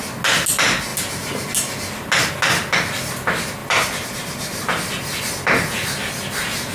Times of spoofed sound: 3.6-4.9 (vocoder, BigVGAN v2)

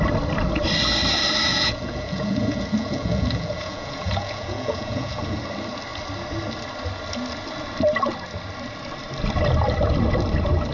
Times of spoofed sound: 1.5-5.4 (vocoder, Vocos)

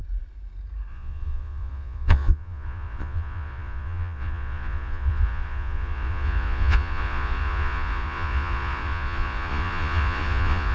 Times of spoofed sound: 0.9-10.7 (vocoder, Vocos)

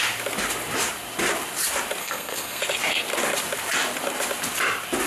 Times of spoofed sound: 2.0-2.6 (codec, SNAC)

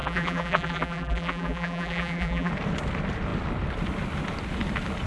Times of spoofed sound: 0.0-2.5 (vocoder, BigVGAN v2)